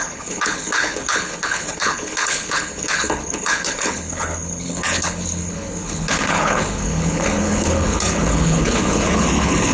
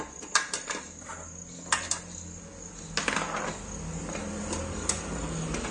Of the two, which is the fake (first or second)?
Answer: first